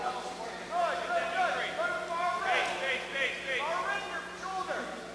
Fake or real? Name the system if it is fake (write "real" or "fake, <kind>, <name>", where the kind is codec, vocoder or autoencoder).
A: real